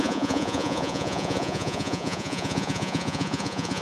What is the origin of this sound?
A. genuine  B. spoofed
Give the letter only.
B